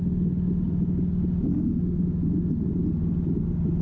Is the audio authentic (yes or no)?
yes